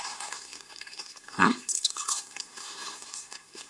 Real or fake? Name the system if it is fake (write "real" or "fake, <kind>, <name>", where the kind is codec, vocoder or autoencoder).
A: fake, codec, SNAC